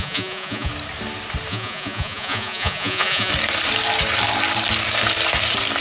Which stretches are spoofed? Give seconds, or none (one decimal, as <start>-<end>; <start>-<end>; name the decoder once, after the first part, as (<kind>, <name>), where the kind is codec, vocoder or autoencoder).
0.0-0.7 (vocoder, Vocos); 1.5-3.3